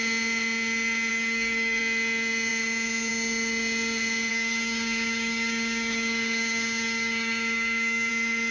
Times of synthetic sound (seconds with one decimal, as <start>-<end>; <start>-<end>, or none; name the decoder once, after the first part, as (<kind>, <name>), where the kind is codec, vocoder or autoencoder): 1.1-1.8 (codec, DAC); 4.3-8.1